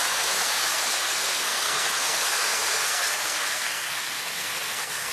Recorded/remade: remade